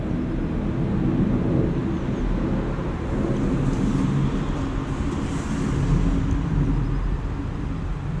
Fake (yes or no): no